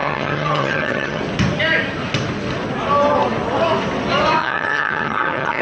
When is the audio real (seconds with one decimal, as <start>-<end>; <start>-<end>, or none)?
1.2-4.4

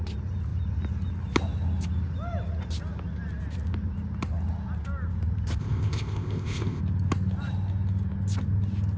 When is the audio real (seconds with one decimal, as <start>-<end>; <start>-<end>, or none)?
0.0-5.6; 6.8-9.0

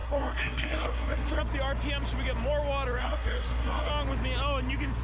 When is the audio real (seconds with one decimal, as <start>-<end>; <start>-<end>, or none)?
1.4-3.0; 3.9-5.0